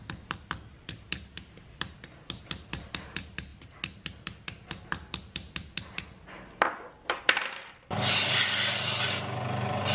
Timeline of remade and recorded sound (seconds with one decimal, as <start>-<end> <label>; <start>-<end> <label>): 0.0-9.9 recorded